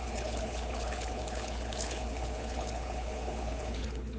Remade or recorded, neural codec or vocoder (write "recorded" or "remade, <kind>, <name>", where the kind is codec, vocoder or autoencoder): remade, codec, HILCodec